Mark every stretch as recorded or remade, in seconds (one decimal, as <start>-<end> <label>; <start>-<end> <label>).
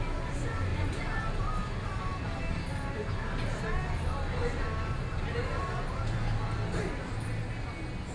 0.0-8.1 recorded